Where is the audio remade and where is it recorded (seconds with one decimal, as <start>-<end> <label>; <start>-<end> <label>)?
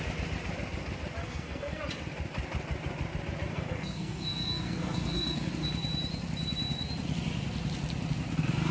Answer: 0.0-1.2 recorded; 1.2-1.8 remade; 1.8-3.5 recorded; 3.5-5.5 remade; 5.5-8.7 recorded